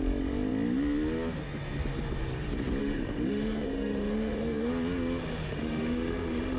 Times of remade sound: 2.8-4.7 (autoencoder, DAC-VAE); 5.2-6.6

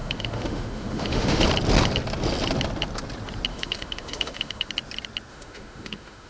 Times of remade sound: 0.0-1.4 (autoencoder, DAC-VAE); 3.5-4.7; 5.3-6.3

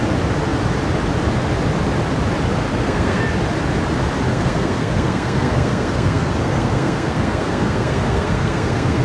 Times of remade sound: 2.7-3.2 (codec, SNAC); 4.3-9.0

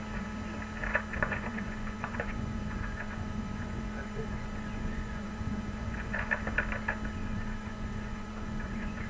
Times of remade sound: 1.1-6.3 (vocoder, Vocos); 7.2-9.1

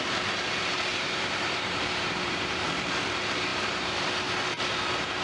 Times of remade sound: 0.9-2.9 (vocoder, BigVGAN v2); 3.5-4.1